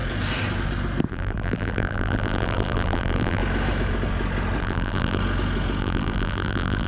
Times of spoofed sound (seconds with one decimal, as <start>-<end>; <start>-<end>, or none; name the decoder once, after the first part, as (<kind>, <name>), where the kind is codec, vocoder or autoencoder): 1.1-3.4 (vocoder, BigVGAN v2); 4.6-5.2; 5.8-6.9

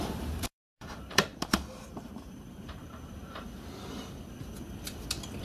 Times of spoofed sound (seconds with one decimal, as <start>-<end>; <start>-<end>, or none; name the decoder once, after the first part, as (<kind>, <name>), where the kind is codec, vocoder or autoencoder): 0.0-1.3 (vocoder, BigVGAN v2); 1.8-2.8

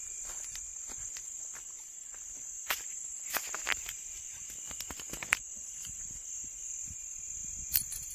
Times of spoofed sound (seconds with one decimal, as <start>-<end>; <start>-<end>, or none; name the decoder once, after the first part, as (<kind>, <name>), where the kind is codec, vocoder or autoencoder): none

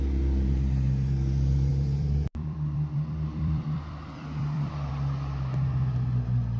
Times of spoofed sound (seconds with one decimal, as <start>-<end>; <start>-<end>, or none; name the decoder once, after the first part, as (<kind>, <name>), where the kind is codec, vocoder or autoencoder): 1.7-4.9 (vocoder, BigVGAN v2)

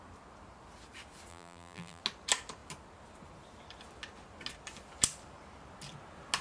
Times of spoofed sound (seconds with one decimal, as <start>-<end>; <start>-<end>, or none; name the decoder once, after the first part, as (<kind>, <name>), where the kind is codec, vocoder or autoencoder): 1.3-2.0 (vocoder, BigVGAN v2)